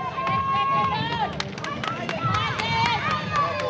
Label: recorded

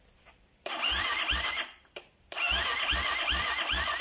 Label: remade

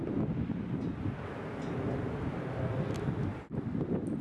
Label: recorded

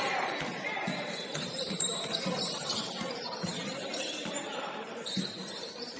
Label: remade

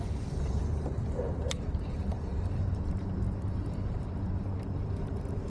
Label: remade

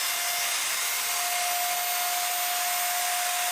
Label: recorded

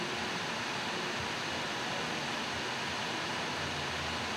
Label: recorded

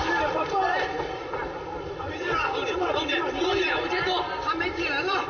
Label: remade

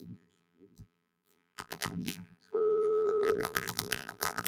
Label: remade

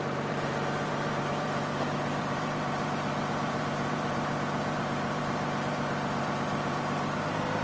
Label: remade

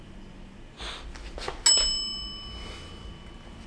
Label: recorded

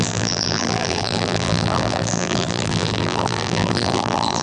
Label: remade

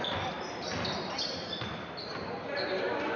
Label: remade